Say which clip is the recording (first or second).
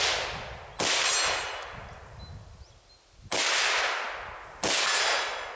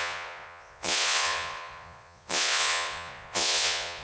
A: first